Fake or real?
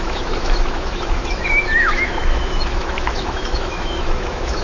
fake